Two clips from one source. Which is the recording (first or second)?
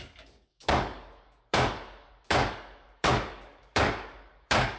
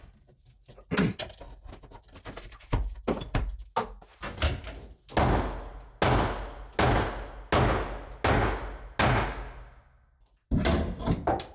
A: second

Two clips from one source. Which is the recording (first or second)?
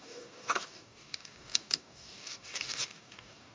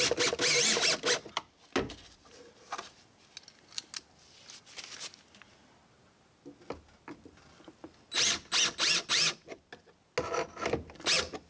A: second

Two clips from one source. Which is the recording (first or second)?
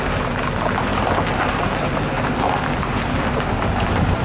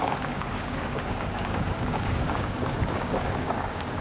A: first